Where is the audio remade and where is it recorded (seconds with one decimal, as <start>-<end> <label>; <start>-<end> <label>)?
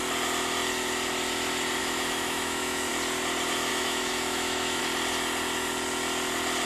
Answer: 0.0-1.8 recorded; 1.8-2.9 remade; 2.9-3.7 recorded; 3.7-4.8 remade; 4.8-6.7 recorded